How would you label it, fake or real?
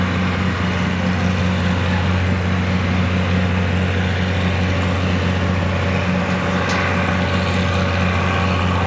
real